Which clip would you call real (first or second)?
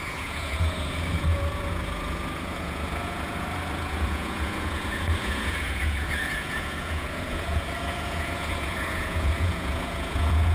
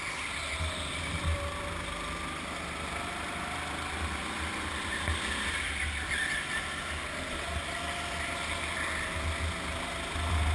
second